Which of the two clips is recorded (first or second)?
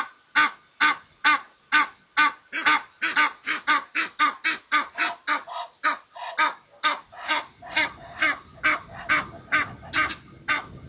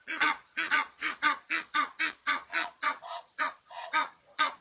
first